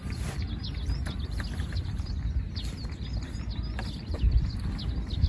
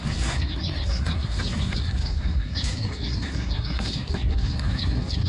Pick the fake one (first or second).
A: second